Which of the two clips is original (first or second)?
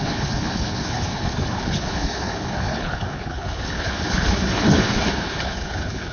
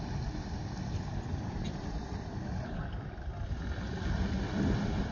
second